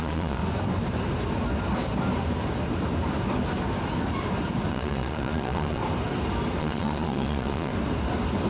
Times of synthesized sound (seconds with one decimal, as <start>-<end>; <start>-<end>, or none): 0.0-0.4; 4.7-5.8; 6.6-7.7

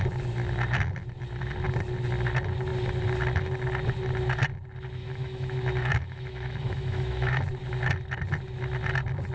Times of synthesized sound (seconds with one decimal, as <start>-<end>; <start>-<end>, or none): 5.0-7.4